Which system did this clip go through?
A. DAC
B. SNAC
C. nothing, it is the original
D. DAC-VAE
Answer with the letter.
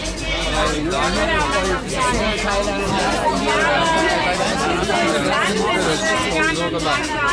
C